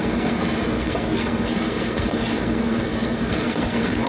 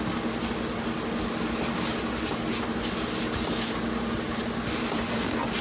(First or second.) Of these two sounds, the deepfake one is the first